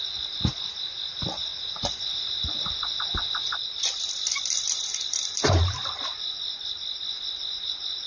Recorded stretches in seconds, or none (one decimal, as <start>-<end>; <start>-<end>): 0.0-8.1